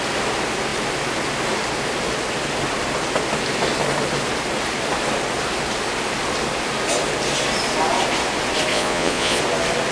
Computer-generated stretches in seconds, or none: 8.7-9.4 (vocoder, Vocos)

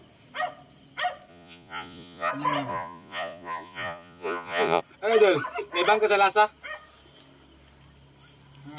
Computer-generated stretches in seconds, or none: 1.3-2.3 (vocoder, Vocos); 2.7-4.8